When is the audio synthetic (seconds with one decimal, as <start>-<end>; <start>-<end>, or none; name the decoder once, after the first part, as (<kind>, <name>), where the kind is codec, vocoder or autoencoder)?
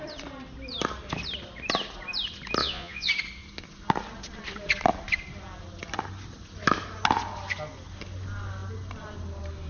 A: 2.6-3.1 (vocoder, Vocos)